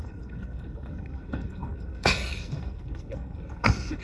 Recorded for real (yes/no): no